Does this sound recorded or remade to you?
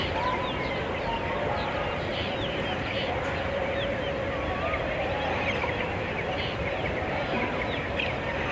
recorded